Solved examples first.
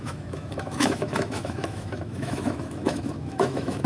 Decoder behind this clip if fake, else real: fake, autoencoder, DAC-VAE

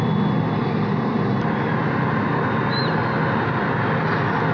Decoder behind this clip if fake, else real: real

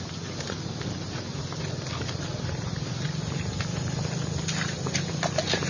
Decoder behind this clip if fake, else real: real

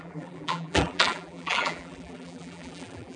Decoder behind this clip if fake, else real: fake, vocoder, BigVGAN v2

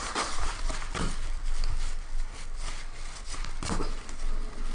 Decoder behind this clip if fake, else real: real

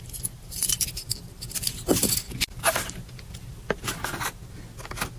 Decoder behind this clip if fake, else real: real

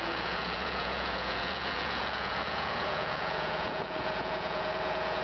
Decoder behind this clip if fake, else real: fake, vocoder, Vocos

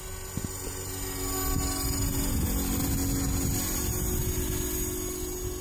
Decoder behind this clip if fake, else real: real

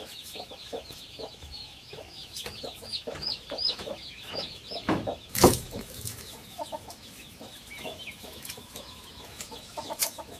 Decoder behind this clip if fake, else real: fake, autoencoder, DAC-VAE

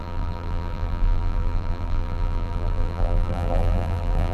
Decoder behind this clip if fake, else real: fake, vocoder, BigVGAN v2